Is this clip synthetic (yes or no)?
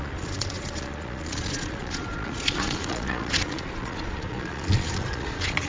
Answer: yes